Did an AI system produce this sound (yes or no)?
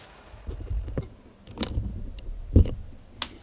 no